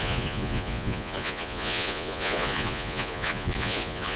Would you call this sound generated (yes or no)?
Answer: yes